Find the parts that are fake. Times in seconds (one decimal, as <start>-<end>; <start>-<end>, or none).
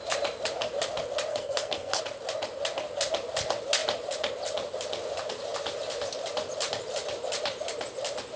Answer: 1.3-2.0